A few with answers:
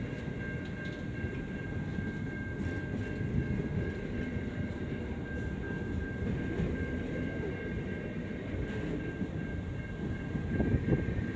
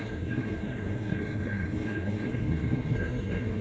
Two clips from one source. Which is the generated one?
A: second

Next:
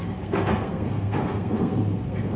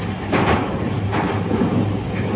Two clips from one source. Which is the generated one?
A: first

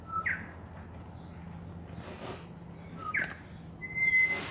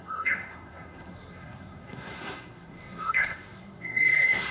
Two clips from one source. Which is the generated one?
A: second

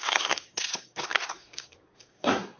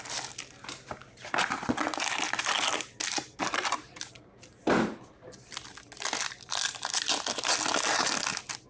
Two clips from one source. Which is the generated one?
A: first